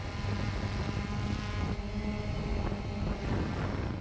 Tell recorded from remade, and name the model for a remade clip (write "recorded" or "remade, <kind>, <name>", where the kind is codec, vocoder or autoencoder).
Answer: recorded